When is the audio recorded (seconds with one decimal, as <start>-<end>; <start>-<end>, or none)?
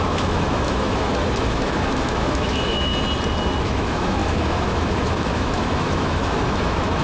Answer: 2.9-3.6